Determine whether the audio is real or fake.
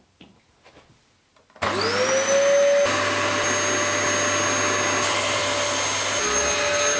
real